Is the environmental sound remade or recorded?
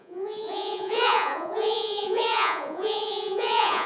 remade